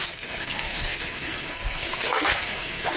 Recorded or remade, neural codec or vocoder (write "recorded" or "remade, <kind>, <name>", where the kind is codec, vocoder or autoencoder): remade, codec, SNAC